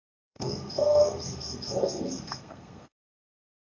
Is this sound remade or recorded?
remade